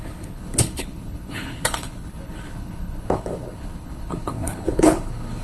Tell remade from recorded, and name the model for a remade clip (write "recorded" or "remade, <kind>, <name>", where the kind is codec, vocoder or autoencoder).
remade, codec, HILCodec